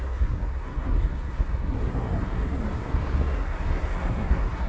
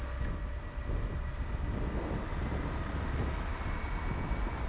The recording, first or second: second